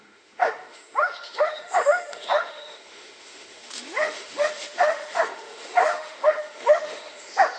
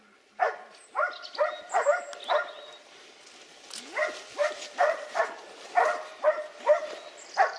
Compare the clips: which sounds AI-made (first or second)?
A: first